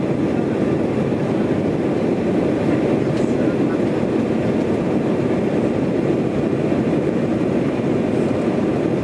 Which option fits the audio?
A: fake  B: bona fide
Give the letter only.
B